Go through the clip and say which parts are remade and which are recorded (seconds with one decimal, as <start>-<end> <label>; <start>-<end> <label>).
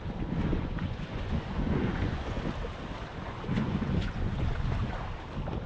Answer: 0.0-0.5 recorded; 0.5-2.4 remade; 2.4-3.1 recorded; 3.1-5.0 remade; 5.0-5.7 recorded